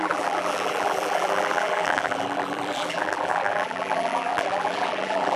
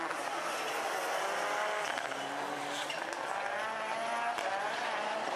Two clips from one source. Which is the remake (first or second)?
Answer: first